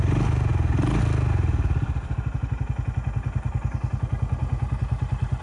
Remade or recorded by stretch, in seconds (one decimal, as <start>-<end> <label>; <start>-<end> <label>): 0.0-5.4 recorded